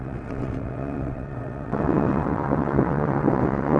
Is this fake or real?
fake